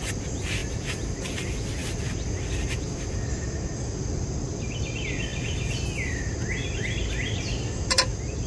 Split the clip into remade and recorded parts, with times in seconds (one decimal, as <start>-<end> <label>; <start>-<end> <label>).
0.0-8.5 recorded